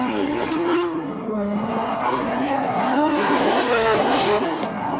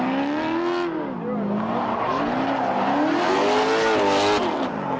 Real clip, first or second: second